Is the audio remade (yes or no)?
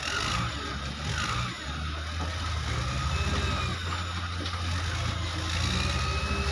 no